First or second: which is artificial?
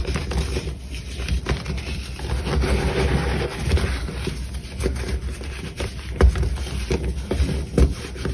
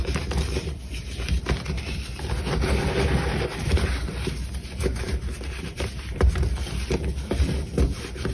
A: second